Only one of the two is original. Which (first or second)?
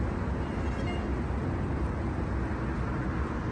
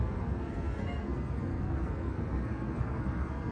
first